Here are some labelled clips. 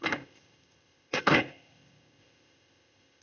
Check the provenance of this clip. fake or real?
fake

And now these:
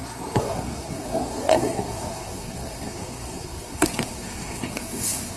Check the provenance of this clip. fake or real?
fake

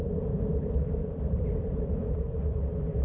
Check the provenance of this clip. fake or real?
fake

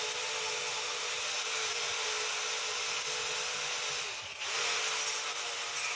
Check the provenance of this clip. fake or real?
real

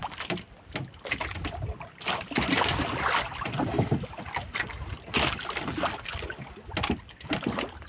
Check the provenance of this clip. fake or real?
real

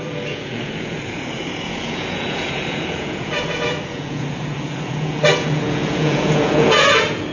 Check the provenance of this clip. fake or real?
fake